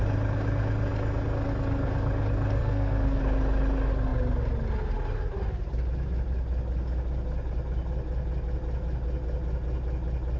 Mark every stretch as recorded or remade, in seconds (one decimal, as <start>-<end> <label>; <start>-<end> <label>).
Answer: 0.0-2.6 recorded; 2.6-3.2 remade; 3.2-10.4 recorded